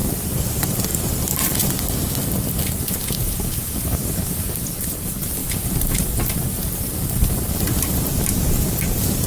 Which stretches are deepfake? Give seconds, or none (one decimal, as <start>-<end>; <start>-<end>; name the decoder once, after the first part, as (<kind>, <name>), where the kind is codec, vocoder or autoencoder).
0.5-0.9 (vocoder, BigVGAN v2); 3.1-9.3